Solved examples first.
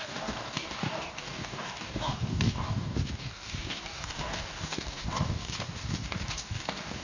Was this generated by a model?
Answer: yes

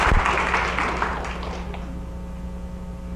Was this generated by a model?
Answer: no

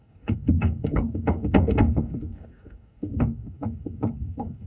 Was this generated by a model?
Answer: yes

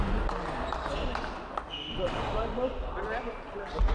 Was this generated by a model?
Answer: no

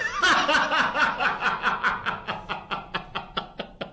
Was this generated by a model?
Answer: no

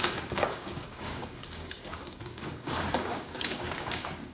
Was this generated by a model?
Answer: yes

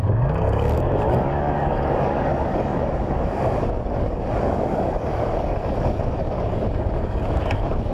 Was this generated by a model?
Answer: yes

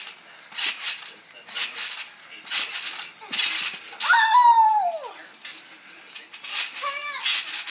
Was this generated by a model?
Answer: no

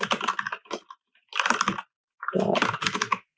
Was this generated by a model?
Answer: no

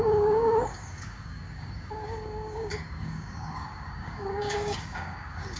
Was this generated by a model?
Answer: yes